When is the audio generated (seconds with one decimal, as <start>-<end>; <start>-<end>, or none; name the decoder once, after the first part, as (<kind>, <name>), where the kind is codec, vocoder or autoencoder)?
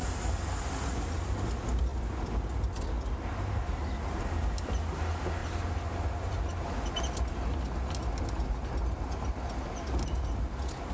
none